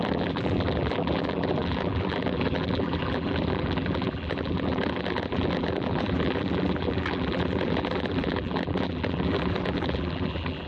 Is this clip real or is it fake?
fake